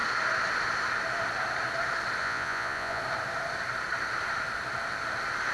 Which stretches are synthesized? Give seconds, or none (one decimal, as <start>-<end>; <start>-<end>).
2.2-3.0